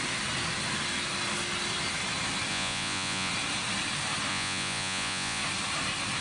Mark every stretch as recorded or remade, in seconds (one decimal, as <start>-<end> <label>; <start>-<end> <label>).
0.0-2.5 recorded; 2.5-3.3 remade; 3.3-4.3 recorded; 4.3-5.4 remade; 5.4-6.2 recorded

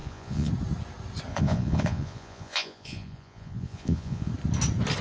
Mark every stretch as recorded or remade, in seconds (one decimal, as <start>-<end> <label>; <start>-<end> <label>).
0.0-0.5 remade; 0.5-1.3 recorded; 1.3-4.3 remade; 4.3-5.0 recorded

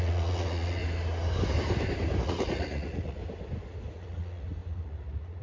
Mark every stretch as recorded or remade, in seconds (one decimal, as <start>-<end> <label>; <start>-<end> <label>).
0.0-0.8 remade; 0.8-2.2 recorded; 2.2-3.2 remade; 3.2-3.9 recorded; 3.9-5.4 remade